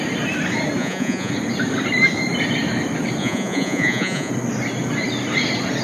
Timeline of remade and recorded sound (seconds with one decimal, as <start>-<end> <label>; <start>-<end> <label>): 0.0-0.8 recorded; 0.8-1.3 remade; 1.3-3.2 recorded; 3.2-4.3 remade; 4.3-5.8 recorded